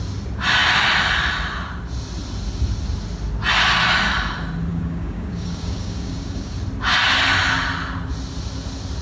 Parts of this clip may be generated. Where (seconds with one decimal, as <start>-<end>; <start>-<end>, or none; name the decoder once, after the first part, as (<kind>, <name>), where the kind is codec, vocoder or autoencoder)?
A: 4.7-6.6 (codec, DAC)